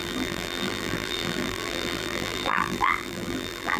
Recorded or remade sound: remade